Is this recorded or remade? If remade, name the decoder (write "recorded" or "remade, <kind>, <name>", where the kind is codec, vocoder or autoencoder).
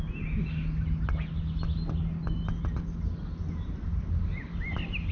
recorded